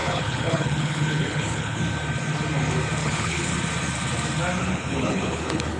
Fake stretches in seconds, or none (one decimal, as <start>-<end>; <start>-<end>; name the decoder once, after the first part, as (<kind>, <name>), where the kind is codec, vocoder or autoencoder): 0.0-1.8 (codec, HILCodec); 3.0-3.5; 4.6-5.8